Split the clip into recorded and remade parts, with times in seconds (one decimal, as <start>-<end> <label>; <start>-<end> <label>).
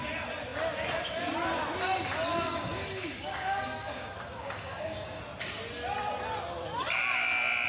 0.0-2.3 recorded; 2.3-5.2 remade; 5.2-7.7 recorded